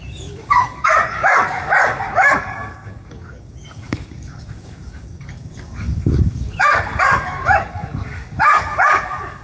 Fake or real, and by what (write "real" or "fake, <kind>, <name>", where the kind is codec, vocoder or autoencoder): fake, codec, DAC